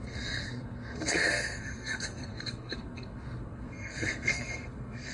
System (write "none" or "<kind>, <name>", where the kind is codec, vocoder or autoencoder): codec, SNAC